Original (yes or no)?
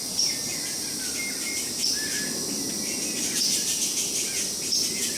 yes